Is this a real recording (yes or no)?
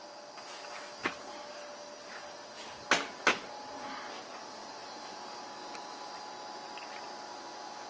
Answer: yes